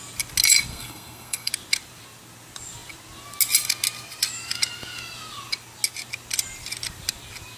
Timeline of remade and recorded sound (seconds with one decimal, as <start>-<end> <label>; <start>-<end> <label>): 0.0-0.7 recorded; 0.7-1.5 remade; 1.5-7.6 recorded